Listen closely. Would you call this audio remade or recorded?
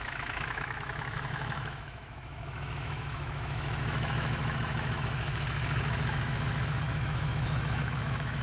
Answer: remade